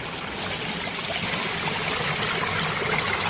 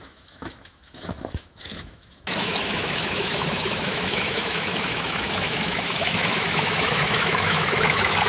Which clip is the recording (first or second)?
first